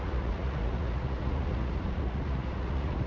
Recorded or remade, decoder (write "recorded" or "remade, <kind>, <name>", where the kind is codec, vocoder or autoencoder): remade, vocoder, Vocos